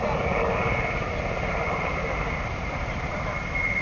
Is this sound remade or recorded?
recorded